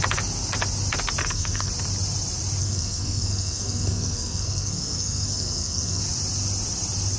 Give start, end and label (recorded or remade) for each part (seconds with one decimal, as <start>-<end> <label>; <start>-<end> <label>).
0.0-1.2 recorded; 1.2-1.7 remade; 1.7-2.6 recorded; 2.6-6.0 remade; 6.0-7.2 recorded